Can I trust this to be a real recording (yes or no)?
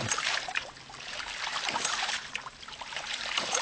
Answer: no